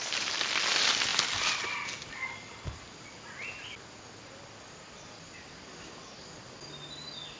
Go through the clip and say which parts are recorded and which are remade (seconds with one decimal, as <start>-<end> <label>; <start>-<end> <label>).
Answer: 0.0-7.4 recorded